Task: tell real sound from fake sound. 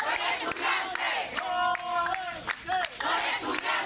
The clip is real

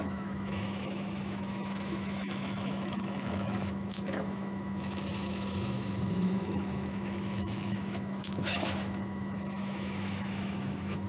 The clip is fake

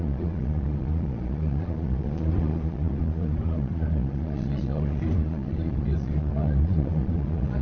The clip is fake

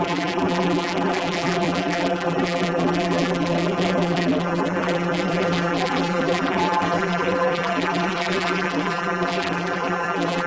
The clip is fake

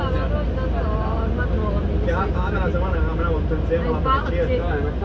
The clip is real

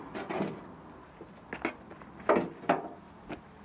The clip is real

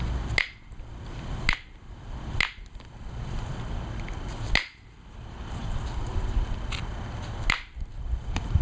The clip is real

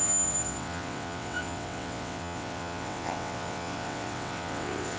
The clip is fake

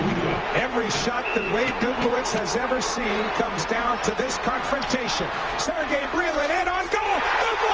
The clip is fake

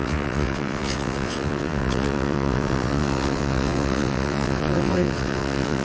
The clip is fake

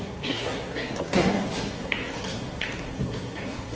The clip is fake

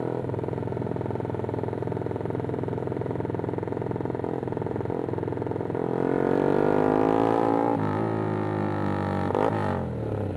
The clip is real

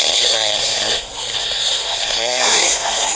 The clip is fake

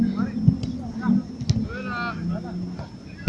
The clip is real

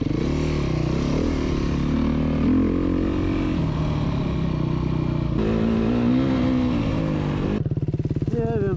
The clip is real